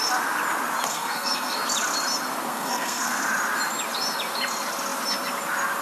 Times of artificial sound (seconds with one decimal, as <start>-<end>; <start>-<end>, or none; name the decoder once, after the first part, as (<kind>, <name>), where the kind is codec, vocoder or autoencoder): 0.9-1.6 (codec, SNAC); 2.5-3.2